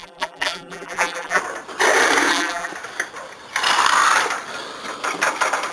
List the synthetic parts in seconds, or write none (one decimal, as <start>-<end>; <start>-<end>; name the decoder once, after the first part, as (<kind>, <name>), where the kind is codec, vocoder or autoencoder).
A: 0.0-1.4 (vocoder, BigVGAN v2); 2.3-2.7